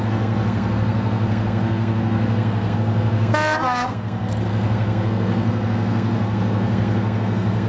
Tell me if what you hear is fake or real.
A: fake